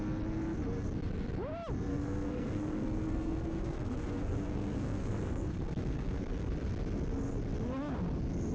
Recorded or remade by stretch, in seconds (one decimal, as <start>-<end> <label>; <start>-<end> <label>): 0.0-1.9 recorded; 1.9-6.5 remade; 6.5-8.5 recorded